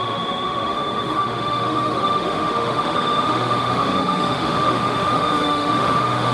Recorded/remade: remade